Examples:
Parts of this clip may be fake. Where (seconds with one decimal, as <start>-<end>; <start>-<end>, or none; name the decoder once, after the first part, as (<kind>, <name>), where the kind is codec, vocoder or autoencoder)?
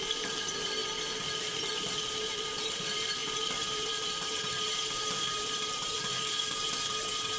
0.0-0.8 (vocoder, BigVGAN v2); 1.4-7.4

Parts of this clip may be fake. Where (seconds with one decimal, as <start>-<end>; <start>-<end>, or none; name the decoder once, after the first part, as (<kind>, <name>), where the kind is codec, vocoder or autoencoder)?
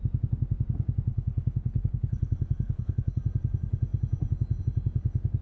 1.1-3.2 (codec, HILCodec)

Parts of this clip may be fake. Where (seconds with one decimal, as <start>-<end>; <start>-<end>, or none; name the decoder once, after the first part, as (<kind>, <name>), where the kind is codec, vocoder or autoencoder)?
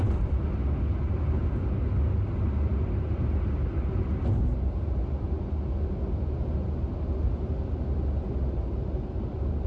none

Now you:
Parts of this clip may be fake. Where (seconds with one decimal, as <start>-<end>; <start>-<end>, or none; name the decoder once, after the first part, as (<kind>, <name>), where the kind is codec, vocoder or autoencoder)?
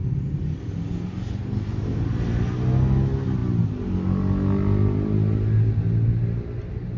0.0-0.6 (vocoder, BigVGAN v2)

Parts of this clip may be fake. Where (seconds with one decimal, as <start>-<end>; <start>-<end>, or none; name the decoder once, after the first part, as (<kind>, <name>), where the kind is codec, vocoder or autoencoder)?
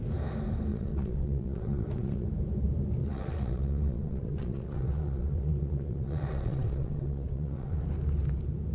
0.7-2.3 (vocoder, WaveNeXt); 3.0-7.8